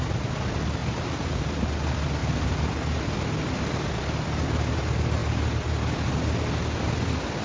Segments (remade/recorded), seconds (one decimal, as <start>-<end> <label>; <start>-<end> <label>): 0.0-0.8 recorded; 0.8-1.4 remade; 1.4-2.2 recorded; 2.2-3.0 remade; 3.0-7.4 recorded